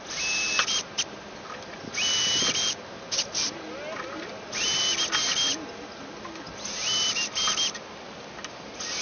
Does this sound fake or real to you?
real